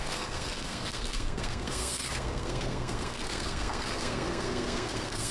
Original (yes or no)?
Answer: no